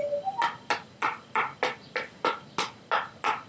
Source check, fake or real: real